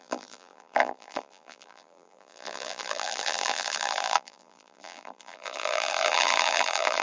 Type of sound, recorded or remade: remade